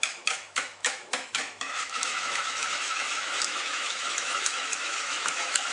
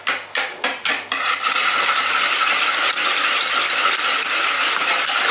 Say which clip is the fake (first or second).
first